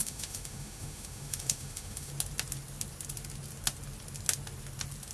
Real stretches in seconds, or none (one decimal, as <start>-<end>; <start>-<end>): 2.1-5.1